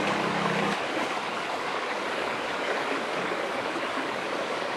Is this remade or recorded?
remade